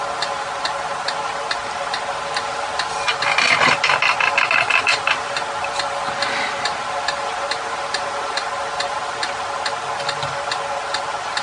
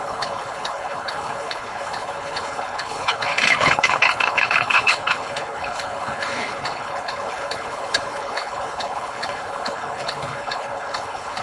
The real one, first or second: first